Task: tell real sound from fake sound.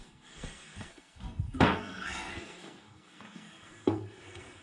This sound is fake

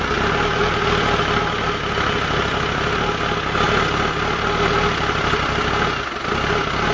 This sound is real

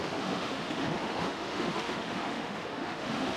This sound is fake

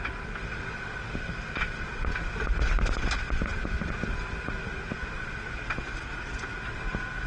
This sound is real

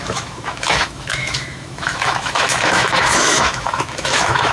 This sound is fake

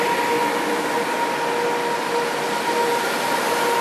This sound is real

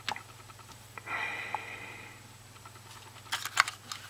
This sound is real